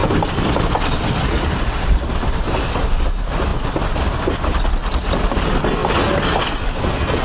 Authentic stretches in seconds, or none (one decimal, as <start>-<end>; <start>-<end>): 0.0-7.2